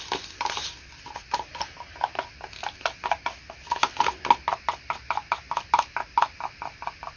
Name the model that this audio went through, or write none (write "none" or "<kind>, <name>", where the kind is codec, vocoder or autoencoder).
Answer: none